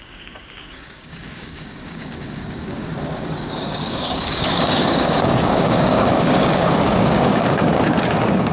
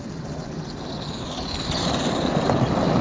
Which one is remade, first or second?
first